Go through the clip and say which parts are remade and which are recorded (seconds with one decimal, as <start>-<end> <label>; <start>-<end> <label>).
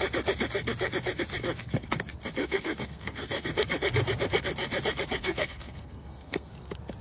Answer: 0.0-2.4 recorded; 2.4-3.5 remade; 3.5-5.2 recorded; 5.2-6.5 remade; 6.5-7.0 recorded